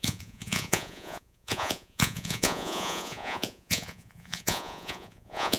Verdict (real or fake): fake